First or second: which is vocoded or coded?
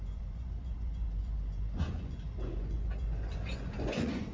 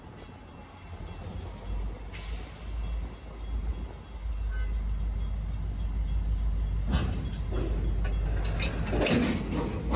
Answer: first